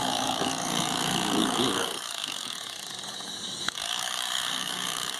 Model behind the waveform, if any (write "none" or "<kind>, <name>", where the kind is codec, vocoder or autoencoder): codec, DAC